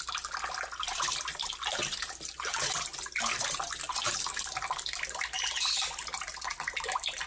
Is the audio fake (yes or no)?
no